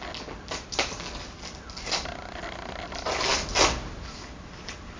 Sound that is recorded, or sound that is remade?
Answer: recorded